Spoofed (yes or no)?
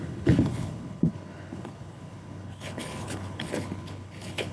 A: yes